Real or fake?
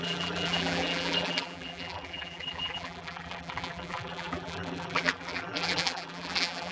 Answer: fake